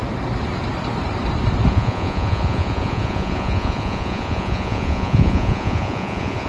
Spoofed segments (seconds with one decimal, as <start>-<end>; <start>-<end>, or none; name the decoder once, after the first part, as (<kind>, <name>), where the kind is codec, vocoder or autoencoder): 1.7-6.5 (vocoder, Vocos)